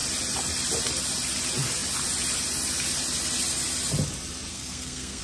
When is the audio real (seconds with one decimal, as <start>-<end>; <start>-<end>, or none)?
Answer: 0.0-4.5